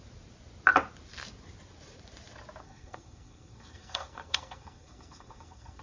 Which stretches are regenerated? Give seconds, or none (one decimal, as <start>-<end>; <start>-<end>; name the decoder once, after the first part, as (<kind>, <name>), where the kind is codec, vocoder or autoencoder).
2.6-5.8 (codec, SNAC)